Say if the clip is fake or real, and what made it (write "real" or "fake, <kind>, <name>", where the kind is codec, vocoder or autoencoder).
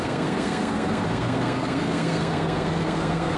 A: fake, codec, SNAC